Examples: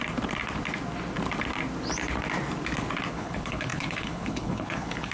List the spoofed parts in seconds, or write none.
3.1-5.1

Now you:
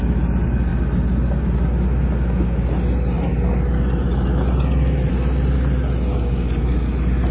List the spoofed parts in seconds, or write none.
none

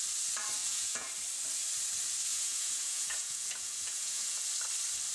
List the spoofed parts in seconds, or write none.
0.6-1.1; 2.3-4.4

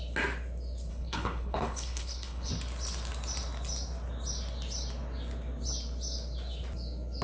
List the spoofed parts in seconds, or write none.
0.9-2.5

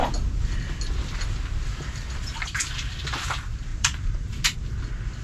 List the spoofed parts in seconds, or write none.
3.7-4.3

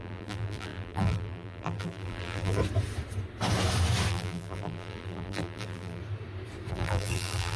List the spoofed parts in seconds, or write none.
0.0-2.6; 4.1-6.0; 6.7-7.6

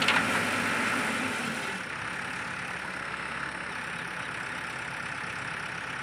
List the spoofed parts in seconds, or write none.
2.8-3.7